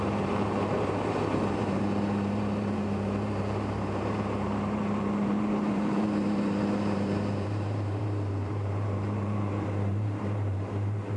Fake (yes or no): yes